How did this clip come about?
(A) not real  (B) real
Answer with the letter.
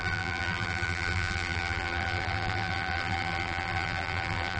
A